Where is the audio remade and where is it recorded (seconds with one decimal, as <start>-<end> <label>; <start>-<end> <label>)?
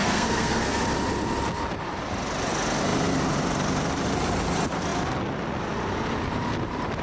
0.0-0.8 remade; 0.8-7.0 recorded